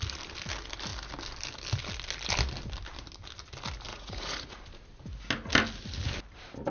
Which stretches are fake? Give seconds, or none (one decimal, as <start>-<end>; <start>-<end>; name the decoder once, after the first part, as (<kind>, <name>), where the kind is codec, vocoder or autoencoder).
3.9-4.6 (vocoder, Vocos)